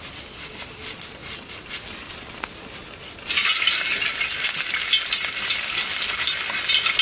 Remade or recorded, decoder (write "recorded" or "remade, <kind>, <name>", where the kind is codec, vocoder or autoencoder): recorded